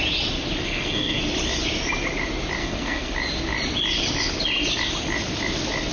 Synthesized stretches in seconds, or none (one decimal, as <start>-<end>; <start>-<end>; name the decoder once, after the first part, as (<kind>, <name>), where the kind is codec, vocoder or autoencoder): 0.6-1.2 (codec, SNAC); 2.6-3.1